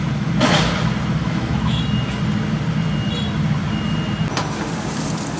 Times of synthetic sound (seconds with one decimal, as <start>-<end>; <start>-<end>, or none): 1.2-1.8